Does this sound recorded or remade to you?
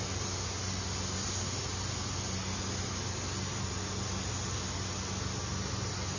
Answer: recorded